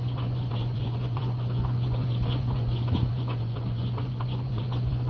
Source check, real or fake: fake